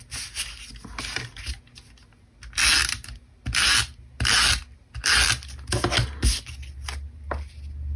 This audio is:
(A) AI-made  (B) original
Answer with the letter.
B